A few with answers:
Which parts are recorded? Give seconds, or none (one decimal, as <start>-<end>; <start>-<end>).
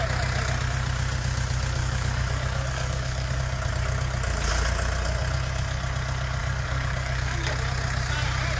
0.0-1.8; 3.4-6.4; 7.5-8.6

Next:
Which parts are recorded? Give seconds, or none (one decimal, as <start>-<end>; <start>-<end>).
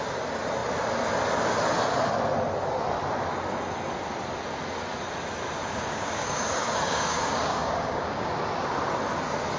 0.0-5.6; 8.3-9.6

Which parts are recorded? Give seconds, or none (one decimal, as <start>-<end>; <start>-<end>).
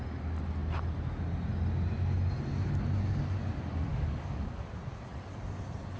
0.0-3.9; 4.6-6.0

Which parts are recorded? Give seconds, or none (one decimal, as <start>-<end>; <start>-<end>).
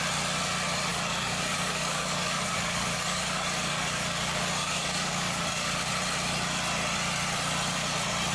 0.0-0.9; 5.9-8.3